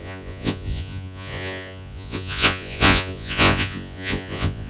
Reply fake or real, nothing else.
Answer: fake